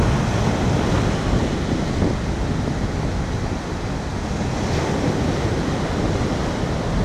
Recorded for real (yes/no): yes